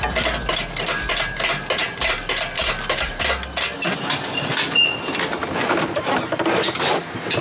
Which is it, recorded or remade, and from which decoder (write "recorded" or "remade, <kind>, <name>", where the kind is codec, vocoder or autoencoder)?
recorded